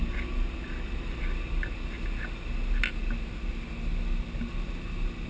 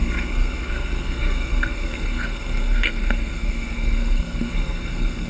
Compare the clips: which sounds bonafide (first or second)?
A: first